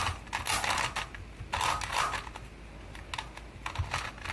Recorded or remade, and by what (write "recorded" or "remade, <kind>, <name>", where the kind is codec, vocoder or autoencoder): recorded